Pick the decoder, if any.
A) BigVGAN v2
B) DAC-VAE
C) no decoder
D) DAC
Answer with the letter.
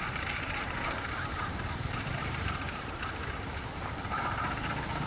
A